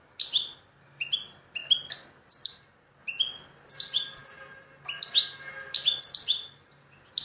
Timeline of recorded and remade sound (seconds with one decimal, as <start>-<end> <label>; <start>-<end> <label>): 0.0-1.6 remade; 1.6-2.2 recorded; 2.2-3.0 remade; 3.0-3.7 recorded; 3.7-4.2 remade; 4.2-5.5 recorded; 5.5-7.2 remade